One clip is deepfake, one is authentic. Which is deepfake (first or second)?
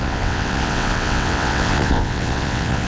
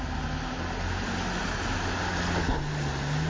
first